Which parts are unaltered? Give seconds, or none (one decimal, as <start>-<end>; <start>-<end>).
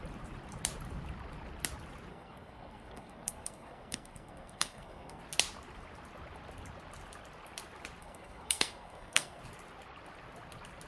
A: 0.0-2.1; 5.2-8.0; 9.4-10.9